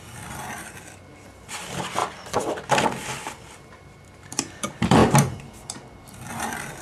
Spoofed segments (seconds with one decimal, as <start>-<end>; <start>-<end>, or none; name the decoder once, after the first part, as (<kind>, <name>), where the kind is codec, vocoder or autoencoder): 0.0-6.8 (vocoder, BigVGAN v2)